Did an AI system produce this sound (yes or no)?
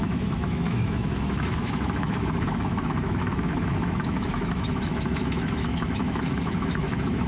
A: yes